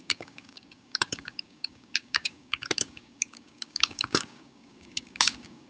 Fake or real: fake